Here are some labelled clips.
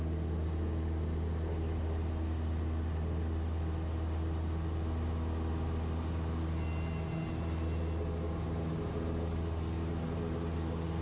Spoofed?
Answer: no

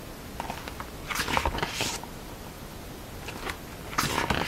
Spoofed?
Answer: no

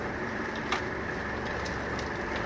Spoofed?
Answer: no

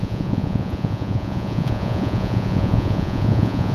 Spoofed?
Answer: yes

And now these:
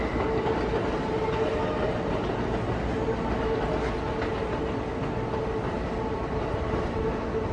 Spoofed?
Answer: no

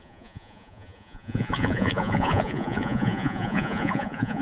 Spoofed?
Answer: yes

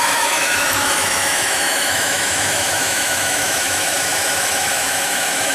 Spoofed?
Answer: yes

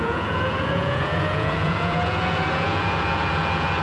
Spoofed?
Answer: yes